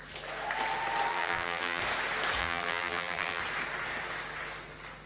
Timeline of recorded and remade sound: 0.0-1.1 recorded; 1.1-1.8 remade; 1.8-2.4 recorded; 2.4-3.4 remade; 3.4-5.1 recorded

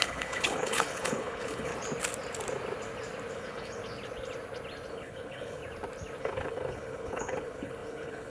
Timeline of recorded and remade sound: 0.0-1.7 remade; 1.7-3.3 recorded; 3.3-3.8 remade; 3.8-4.9 recorded; 4.9-5.6 remade; 5.6-6.2 recorded; 6.2-8.3 remade

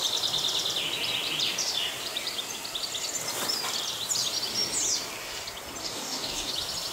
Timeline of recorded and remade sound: 0.0-5.8 recorded; 5.8-6.5 remade; 6.5-6.9 recorded

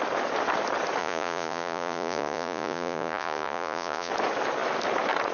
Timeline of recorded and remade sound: 0.0-1.0 recorded; 1.0-4.1 remade; 4.1-5.3 recorded